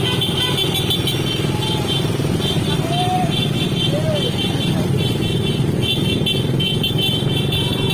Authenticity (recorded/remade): recorded